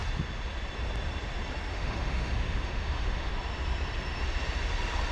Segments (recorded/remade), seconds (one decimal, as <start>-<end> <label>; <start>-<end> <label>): 0.0-1.7 recorded; 1.7-3.3 remade; 3.3-5.1 recorded